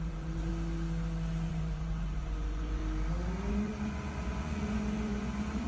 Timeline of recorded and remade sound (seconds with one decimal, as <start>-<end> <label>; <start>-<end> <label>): 0.0-0.5 remade; 0.5-1.5 recorded; 1.5-2.8 remade; 2.8-3.5 recorded; 3.5-5.7 remade